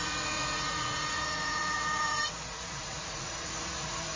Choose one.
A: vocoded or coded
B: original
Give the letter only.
A